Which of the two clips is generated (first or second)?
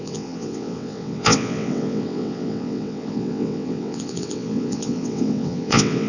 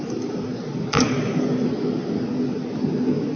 first